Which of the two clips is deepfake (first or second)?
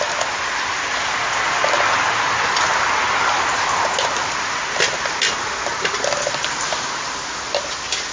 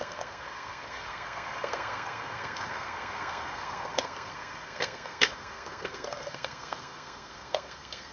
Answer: second